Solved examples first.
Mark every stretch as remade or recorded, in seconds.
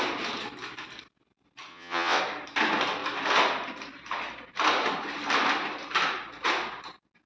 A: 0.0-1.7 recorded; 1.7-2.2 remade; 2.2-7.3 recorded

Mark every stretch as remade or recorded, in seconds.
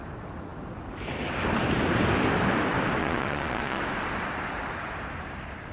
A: 0.0-3.0 recorded; 3.0-3.8 remade; 3.8-5.7 recorded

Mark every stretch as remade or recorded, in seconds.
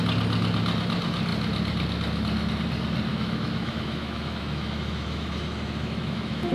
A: 0.0-3.1 recorded; 3.1-6.5 remade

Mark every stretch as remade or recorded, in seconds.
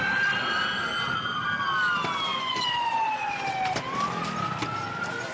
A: 0.0-2.3 recorded; 2.3-3.4 remade; 3.4-5.3 recorded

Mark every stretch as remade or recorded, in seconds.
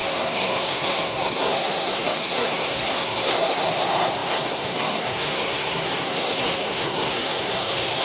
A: 0.0-8.0 remade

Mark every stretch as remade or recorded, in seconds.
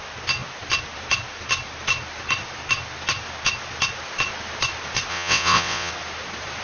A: 0.0-5.1 recorded; 5.1-5.9 remade; 5.9-6.6 recorded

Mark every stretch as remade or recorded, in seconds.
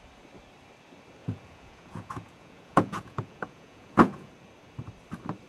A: 0.0-1.2 recorded; 1.2-4.3 remade; 4.3-5.5 recorded